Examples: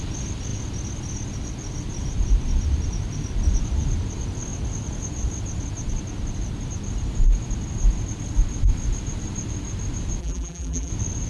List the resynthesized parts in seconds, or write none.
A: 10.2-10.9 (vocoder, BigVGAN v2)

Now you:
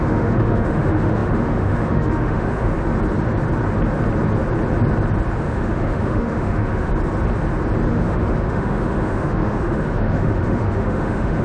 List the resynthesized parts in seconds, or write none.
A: 0.0-2.7 (autoencoder, DAC-VAE); 5.4-6.9; 7.9-11.4

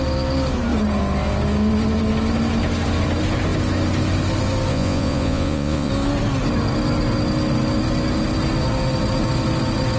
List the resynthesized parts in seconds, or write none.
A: 4.7-5.9 (vocoder, Vocos)

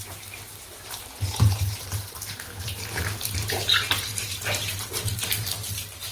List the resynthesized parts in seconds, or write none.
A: 0.0-6.1 (vocoder, BigVGAN v2)

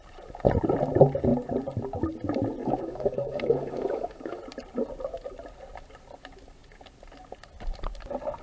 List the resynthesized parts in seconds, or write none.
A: 2.6-4.4 (codec, DAC)